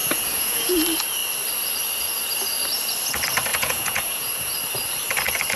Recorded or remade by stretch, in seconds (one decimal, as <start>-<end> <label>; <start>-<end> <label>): 0.0-0.7 remade; 0.7-3.5 recorded; 3.5-4.5 remade; 4.5-5.6 recorded